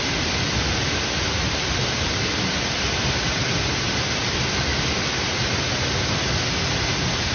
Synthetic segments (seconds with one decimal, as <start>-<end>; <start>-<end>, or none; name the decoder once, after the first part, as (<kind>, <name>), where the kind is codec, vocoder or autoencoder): none